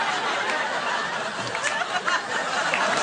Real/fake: real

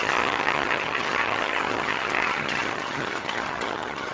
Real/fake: fake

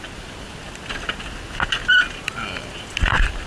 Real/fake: real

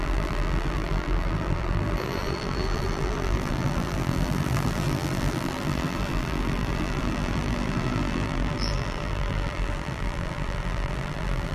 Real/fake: fake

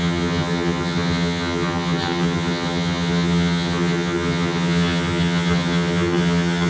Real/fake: fake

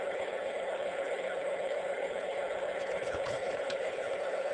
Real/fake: fake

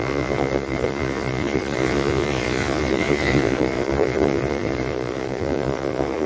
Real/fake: fake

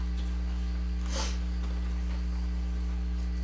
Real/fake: real